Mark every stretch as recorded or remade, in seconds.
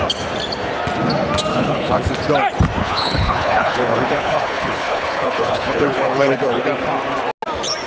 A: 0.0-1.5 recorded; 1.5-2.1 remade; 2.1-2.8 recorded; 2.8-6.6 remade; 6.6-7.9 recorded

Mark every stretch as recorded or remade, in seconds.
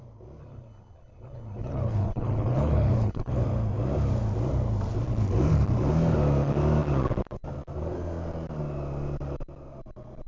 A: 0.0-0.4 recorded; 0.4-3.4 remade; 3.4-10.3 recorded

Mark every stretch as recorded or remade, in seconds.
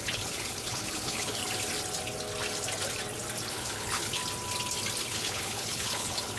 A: 0.0-1.4 remade; 1.4-3.5 recorded; 3.5-4.2 remade; 4.2-5.0 recorded; 5.0-6.4 remade